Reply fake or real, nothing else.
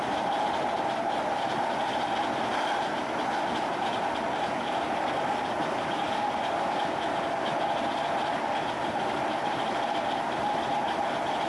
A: fake